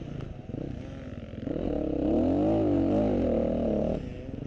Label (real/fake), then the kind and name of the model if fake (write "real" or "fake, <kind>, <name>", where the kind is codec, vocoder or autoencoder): real